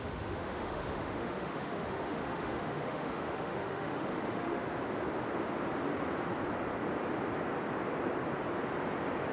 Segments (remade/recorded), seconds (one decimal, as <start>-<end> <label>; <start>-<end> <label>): 0.0-4.6 remade; 4.6-9.3 recorded

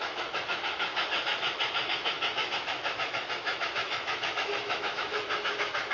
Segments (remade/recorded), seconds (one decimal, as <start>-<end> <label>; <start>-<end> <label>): 0.0-5.9 remade

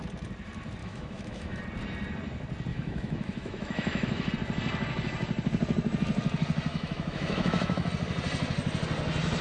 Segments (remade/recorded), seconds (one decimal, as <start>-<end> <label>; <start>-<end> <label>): 0.0-0.8 recorded; 0.8-1.6 remade; 1.6-2.7 recorded; 2.7-4.3 remade; 4.3-6.7 recorded; 6.7-7.9 remade; 7.9-9.4 recorded